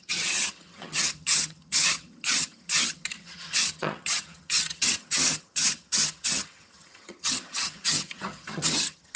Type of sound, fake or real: fake